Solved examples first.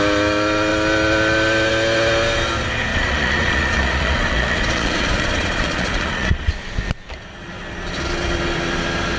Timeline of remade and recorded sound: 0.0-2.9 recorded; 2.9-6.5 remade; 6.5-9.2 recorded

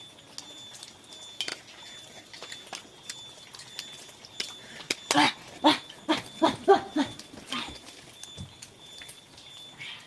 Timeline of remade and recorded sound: 0.0-10.1 recorded

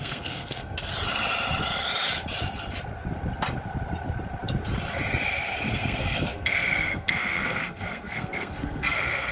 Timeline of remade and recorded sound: 0.0-0.9 remade; 0.9-5.7 recorded; 5.7-9.3 remade

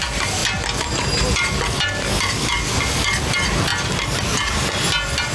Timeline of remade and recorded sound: 0.0-5.3 recorded